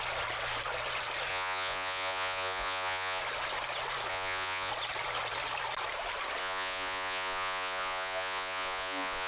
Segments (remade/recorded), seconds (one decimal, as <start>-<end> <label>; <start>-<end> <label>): 0.0-1.3 recorded; 1.3-3.2 remade; 3.2-4.1 recorded; 4.1-4.7 remade; 4.7-6.4 recorded; 6.4-9.3 remade